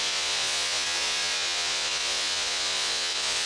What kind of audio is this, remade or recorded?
remade